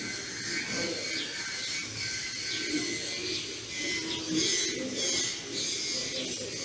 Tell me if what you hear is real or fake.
real